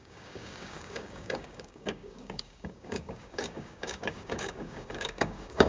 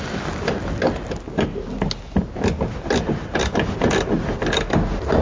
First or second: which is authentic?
second